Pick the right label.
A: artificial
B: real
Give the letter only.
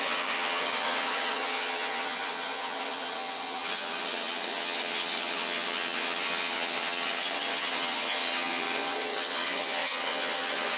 A